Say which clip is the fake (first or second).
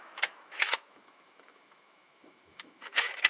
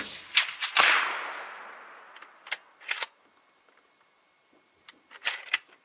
first